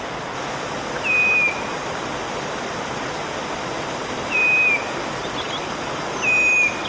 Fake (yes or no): no